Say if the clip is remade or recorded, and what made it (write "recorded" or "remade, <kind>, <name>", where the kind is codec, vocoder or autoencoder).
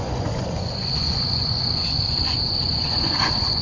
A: remade, vocoder, Vocos